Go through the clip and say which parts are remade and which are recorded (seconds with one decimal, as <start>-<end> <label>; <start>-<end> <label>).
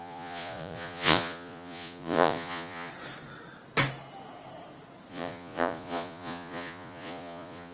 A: 0.0-2.9 remade; 2.9-5.1 recorded; 5.1-7.7 remade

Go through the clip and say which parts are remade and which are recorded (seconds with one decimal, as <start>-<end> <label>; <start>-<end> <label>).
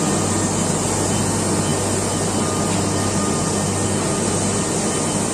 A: 0.0-5.3 recorded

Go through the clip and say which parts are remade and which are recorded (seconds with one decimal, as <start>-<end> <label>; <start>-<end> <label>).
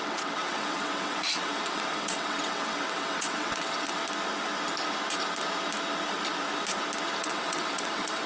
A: 0.0-4.0 remade; 4.0-7.2 recorded; 7.2-8.3 remade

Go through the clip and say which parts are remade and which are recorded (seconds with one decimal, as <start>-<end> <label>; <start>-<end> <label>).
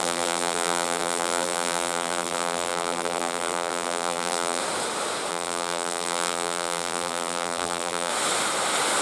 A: 0.0-4.6 remade; 4.6-5.3 recorded; 5.3-8.1 remade; 8.1-9.0 recorded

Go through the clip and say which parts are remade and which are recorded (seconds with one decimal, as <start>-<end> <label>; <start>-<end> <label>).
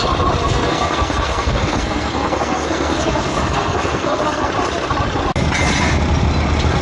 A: 0.0-0.4 recorded; 0.4-4.5 remade; 4.5-6.8 recorded